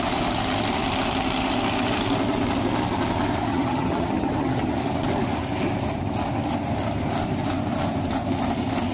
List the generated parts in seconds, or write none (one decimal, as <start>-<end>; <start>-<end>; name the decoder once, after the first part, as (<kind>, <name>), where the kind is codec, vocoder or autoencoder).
3.5-4.7 (vocoder, HiFi-GAN)